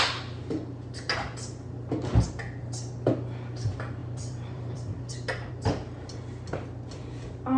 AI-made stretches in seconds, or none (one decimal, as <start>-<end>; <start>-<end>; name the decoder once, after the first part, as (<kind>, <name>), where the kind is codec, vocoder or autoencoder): 4.0-5.5 (vocoder, BigVGAN v2)